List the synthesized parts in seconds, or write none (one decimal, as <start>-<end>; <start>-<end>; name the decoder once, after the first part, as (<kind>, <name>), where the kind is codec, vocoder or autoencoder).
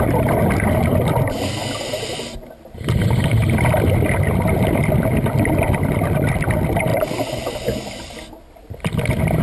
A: 0.0-1.6 (vocoder, BigVGAN v2); 6.5-6.9; 8.0-9.4